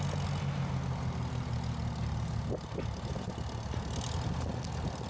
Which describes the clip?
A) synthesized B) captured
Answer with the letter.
B